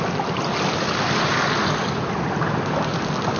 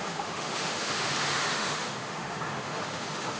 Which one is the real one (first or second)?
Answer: first